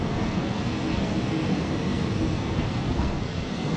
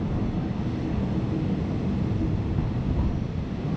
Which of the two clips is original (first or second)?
second